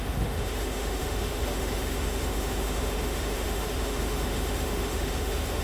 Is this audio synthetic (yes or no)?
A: yes